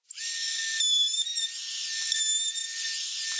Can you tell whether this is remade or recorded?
recorded